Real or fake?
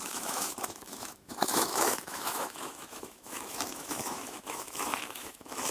fake